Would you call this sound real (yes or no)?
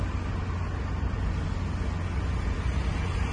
yes